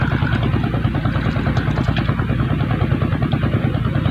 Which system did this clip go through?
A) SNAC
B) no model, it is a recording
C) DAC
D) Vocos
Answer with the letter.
B